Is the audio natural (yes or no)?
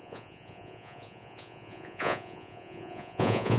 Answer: no